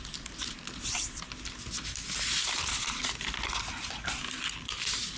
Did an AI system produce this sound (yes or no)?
no